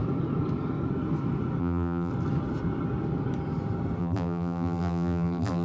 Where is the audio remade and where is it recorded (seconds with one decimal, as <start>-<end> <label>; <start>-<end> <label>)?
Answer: 0.0-1.6 recorded; 1.6-2.1 remade; 2.1-4.0 recorded; 4.0-5.6 remade

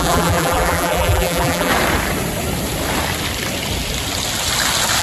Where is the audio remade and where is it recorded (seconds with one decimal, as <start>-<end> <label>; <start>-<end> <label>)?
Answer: 0.0-1.7 remade; 1.7-5.0 recorded

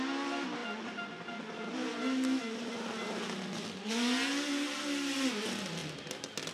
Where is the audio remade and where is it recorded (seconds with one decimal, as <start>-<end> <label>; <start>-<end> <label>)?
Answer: 0.0-5.8 recorded; 5.8-6.5 remade

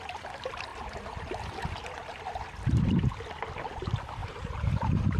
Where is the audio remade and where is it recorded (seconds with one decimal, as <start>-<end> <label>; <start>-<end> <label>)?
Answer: 0.0-4.2 recorded; 4.2-5.2 remade

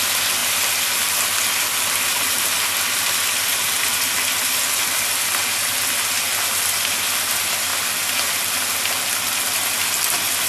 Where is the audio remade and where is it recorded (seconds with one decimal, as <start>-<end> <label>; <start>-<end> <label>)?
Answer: 0.0-10.5 recorded

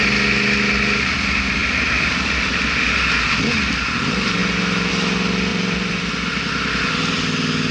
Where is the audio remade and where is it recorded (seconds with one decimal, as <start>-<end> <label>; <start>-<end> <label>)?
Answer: 0.0-1.6 recorded; 1.6-2.5 remade; 2.5-4.4 recorded; 4.4-4.9 remade; 4.9-5.5 recorded; 5.5-6.1 remade; 6.1-7.7 recorded